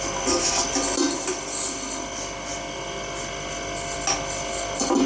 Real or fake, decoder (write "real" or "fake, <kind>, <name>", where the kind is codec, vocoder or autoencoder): real